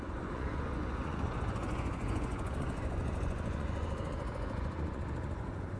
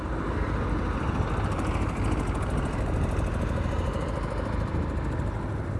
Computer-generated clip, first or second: first